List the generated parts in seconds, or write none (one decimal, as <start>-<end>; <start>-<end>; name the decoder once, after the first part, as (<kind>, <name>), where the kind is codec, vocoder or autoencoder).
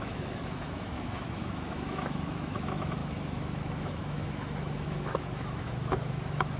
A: 0.0-6.6 (autoencoder, DAC-VAE)